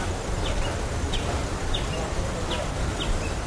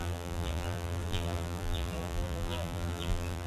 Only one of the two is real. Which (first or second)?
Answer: first